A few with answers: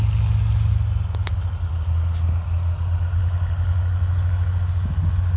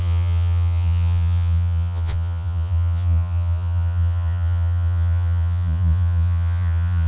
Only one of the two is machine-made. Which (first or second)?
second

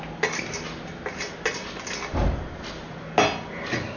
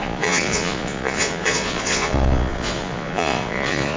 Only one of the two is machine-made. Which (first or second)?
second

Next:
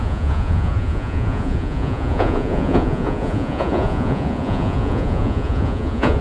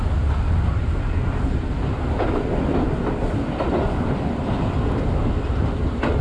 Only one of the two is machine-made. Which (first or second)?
first